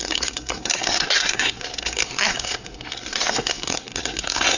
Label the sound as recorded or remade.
remade